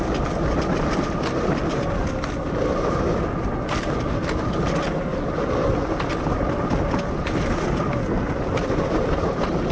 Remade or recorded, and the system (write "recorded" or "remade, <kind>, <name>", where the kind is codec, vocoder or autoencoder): recorded